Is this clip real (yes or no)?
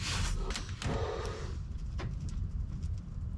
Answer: yes